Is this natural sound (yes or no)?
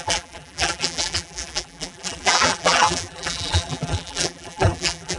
no